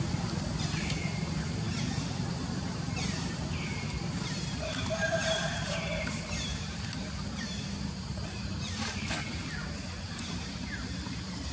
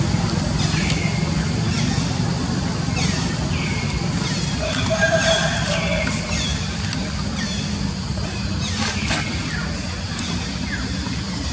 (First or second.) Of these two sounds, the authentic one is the second